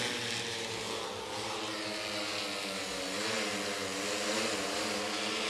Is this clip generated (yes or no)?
yes